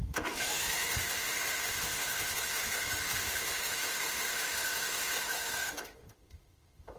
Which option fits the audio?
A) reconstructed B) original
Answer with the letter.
A